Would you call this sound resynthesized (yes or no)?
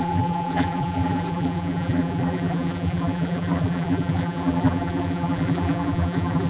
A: yes